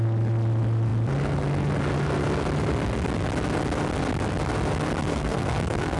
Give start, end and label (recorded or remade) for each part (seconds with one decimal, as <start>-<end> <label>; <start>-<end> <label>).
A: 0.0-5.1 recorded; 5.1-6.0 remade